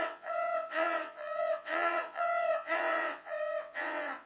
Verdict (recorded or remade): remade